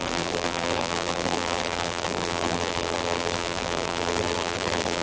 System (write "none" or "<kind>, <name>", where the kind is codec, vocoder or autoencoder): vocoder, BigVGAN v2